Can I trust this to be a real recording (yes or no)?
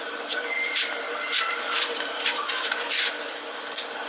no